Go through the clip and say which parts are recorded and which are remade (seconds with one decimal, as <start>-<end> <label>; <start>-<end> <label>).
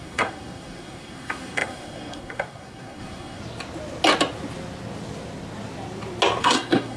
0.0-3.4 remade; 3.4-6.4 recorded; 6.4-7.0 remade